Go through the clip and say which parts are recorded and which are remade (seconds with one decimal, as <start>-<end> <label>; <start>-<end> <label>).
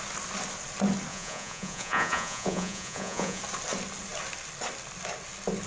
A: 0.0-1.1 recorded; 1.1-3.4 remade; 3.4-5.7 recorded